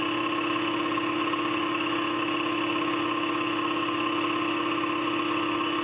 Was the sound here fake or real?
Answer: real